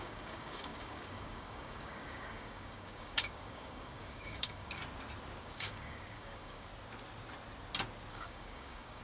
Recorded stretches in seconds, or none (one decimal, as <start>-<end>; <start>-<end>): 4.8-5.4; 6.7-8.1